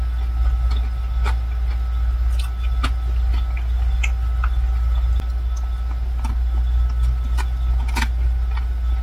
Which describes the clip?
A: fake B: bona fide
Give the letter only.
B